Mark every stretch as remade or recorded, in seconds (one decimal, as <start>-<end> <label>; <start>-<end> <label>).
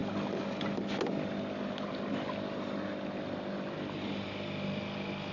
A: 0.0-5.3 recorded